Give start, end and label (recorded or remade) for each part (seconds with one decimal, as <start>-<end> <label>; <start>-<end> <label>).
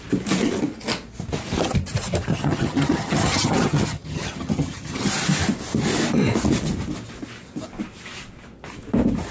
0.0-2.3 recorded; 2.3-5.1 remade; 5.1-9.3 recorded